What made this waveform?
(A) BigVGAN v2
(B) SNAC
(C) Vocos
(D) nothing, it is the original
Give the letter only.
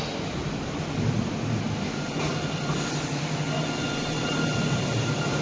D